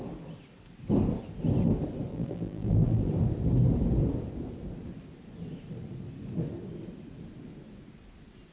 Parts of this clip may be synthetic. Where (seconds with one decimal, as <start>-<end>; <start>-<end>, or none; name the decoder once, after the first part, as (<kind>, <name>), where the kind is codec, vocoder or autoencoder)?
2.1-3.1 (vocoder, BigVGAN v2)